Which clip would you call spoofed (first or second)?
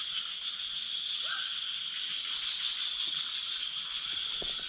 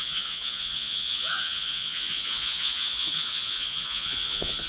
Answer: second